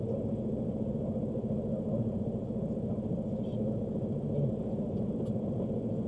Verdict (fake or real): real